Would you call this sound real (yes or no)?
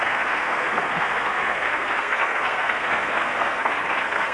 no